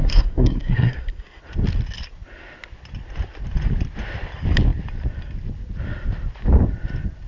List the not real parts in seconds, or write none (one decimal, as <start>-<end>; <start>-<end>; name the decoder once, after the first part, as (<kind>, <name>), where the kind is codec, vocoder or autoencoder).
0.0-1.4 (codec, SNAC)